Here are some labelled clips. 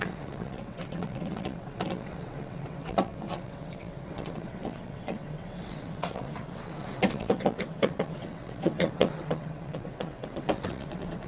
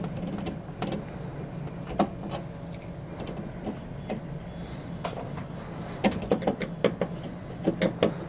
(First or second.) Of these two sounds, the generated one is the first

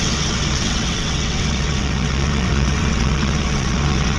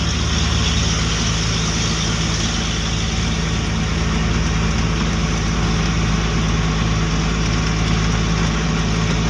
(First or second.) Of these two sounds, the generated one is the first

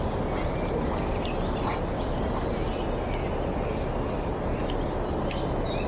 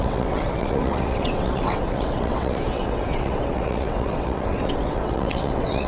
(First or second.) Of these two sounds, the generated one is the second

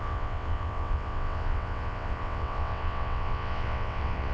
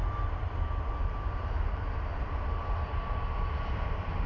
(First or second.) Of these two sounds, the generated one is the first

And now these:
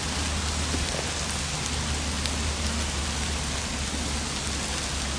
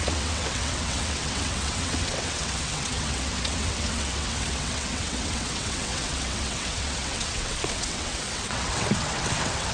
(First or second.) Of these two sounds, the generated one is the second